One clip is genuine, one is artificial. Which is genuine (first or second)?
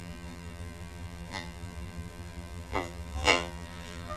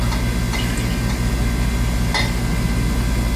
second